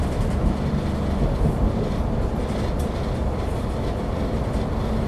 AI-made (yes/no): no